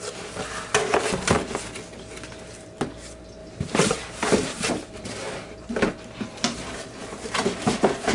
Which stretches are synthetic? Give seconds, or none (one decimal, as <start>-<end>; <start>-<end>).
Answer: 3.4-4.7